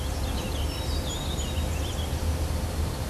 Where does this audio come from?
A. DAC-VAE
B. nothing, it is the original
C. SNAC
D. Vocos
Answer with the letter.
B